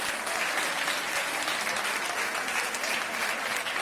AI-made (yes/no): no